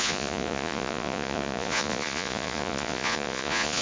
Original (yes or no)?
no